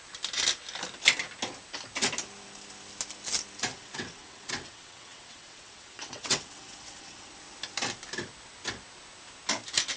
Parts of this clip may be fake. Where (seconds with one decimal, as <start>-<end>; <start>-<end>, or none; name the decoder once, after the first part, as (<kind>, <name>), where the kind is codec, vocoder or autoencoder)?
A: 3.7-7.3 (vocoder, WaveNeXt)